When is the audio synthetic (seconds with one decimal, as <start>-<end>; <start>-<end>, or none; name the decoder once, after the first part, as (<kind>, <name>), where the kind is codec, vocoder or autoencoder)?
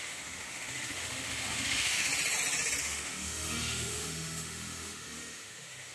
0.0-2.1 (autoencoder, DAC-VAE); 2.8-5.9